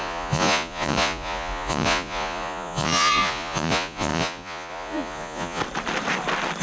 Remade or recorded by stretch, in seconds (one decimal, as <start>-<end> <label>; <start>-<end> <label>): 0.0-5.6 remade; 5.6-6.6 recorded